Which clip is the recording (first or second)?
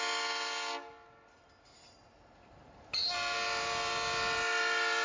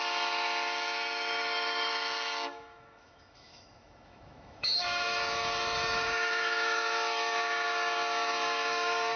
first